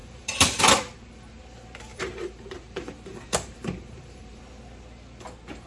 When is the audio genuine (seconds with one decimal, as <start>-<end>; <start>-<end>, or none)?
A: 0.6-1.9; 4.4-5.7